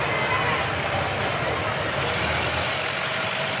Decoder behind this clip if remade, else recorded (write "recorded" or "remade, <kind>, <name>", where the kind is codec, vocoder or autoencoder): recorded